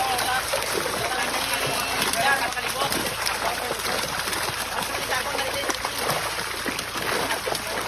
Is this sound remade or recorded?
recorded